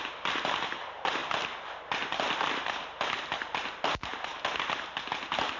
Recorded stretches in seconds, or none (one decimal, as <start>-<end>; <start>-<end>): 0.0-5.6